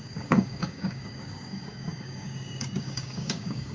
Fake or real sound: fake